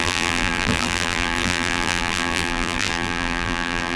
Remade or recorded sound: remade